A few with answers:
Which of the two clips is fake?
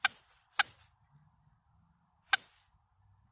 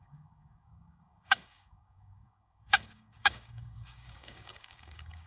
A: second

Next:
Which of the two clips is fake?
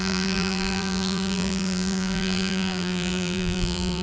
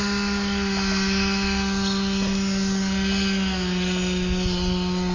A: first